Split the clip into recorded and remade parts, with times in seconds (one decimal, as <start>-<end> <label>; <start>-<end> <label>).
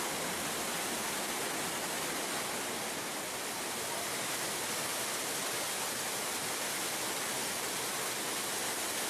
0.0-9.1 recorded